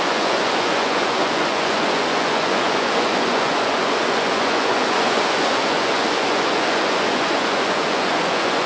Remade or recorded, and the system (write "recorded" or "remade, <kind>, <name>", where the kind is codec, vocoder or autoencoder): remade, vocoder, Vocos